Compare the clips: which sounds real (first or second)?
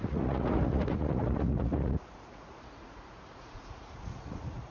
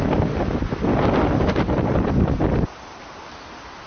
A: second